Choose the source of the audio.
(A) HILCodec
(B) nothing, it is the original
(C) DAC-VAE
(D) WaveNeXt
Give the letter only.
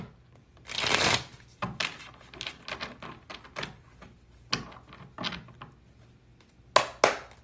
B